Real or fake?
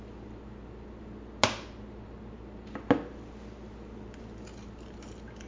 real